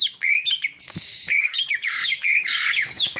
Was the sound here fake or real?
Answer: fake